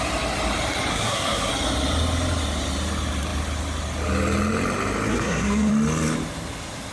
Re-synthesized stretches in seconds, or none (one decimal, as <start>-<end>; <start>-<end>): 0.9-1.5; 5.1-5.7